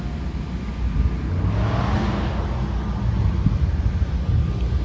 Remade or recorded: recorded